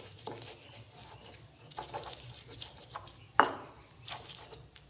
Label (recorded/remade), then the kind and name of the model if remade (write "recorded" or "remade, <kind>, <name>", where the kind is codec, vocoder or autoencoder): remade, vocoder, BigVGAN v2